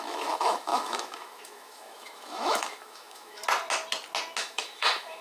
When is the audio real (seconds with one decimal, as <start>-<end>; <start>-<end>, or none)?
3.4-4.4